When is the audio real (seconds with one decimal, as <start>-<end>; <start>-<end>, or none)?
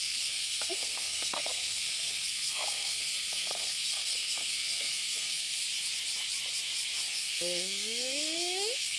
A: 5.6-7.1